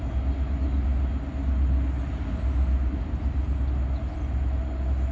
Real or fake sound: real